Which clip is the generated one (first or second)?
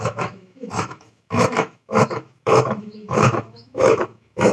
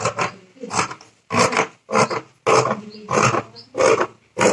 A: first